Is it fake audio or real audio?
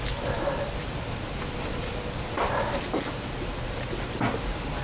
real